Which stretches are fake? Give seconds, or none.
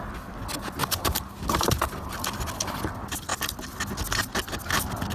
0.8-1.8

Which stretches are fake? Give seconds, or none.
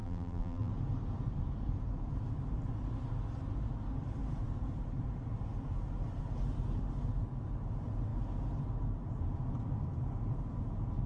0.0-0.7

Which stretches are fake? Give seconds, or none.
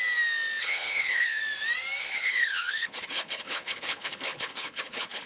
0.6-1.4; 2.0-5.3